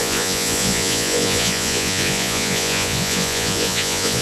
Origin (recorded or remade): remade